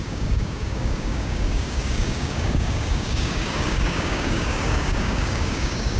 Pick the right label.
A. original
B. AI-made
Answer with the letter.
B